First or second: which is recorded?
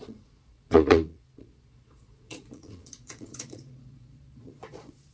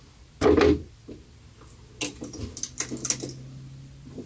second